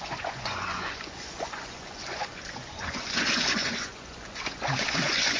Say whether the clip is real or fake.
fake